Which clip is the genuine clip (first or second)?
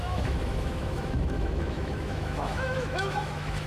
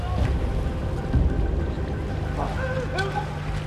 second